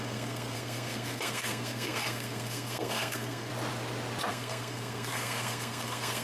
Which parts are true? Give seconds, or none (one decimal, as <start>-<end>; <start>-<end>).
3.5-4.3